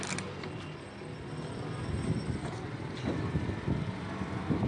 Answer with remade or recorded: recorded